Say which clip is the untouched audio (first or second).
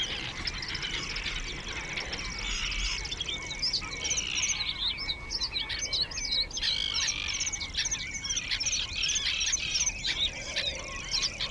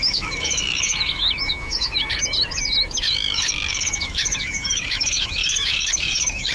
first